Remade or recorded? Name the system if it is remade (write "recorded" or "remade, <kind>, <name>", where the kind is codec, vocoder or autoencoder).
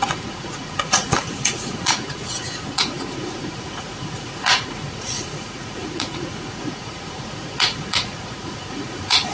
remade, vocoder, Vocos